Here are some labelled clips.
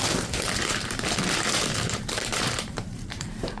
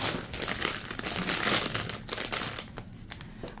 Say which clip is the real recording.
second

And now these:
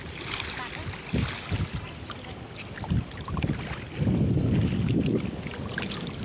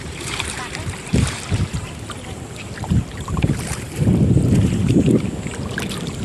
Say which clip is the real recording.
first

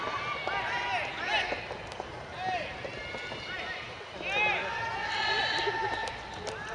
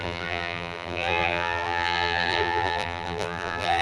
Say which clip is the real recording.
first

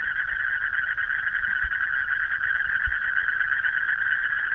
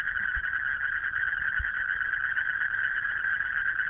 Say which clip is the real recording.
second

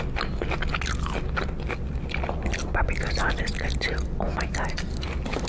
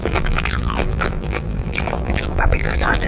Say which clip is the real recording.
first